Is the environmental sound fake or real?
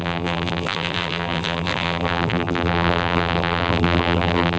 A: fake